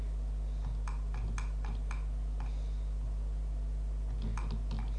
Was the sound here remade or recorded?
recorded